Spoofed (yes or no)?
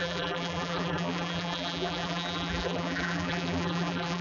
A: yes